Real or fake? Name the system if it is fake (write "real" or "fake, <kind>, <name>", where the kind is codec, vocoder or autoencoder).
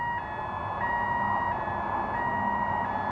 real